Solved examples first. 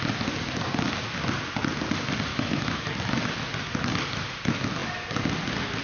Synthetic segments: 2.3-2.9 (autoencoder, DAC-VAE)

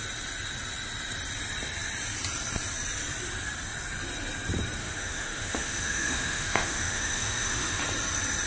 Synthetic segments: 4.8-7.8 (autoencoder, DAC-VAE)

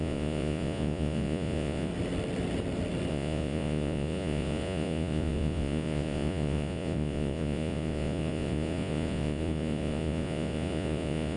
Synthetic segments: 0.0-1.9 (vocoder, Vocos); 3.1-11.4

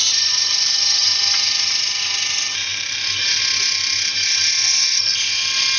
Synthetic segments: none

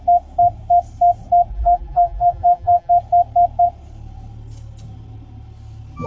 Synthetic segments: 1.5-2.9 (vocoder, BigVGAN v2)